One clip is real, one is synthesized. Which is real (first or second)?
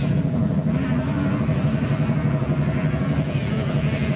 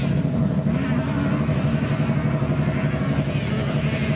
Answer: second